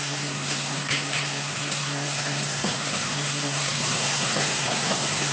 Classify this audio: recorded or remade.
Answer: remade